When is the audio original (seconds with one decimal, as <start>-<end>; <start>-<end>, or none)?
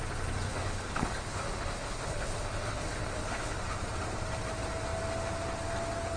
0.0-0.5; 3.6-6.2